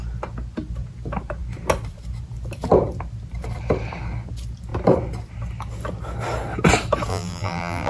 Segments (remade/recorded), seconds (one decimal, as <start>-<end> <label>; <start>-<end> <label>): 0.0-7.1 recorded; 7.1-7.9 remade